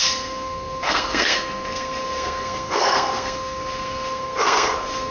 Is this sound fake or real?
fake